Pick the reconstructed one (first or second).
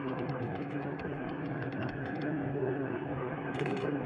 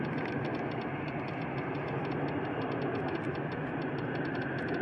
first